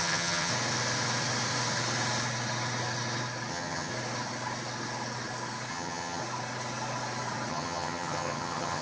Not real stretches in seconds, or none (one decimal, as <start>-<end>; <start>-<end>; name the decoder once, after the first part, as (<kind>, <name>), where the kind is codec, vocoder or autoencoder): 0.0-0.5 (vocoder, HiFi-GAN); 3.5-3.9; 5.7-6.2; 7.5-8.8